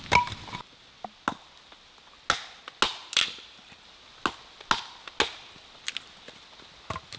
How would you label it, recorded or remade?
recorded